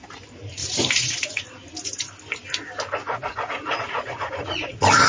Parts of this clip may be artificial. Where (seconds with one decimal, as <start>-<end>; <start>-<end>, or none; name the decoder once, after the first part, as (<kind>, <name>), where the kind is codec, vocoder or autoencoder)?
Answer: 0.6-1.4 (vocoder, Vocos); 3.0-5.1